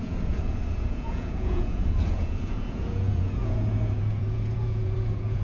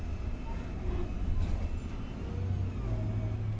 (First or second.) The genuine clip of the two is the second